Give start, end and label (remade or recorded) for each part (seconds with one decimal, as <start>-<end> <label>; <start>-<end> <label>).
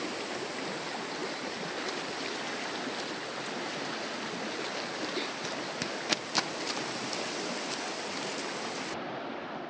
0.0-9.7 recorded